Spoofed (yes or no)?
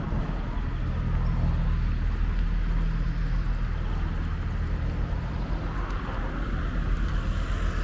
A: no